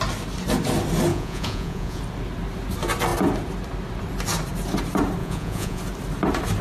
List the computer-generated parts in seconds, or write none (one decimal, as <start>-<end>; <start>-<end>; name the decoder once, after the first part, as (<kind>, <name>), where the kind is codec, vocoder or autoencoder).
1.1-2.0 (vocoder, Vocos); 5.2-5.8